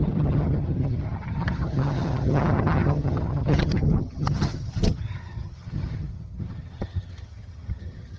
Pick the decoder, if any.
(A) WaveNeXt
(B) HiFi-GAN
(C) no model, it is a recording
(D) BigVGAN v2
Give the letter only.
B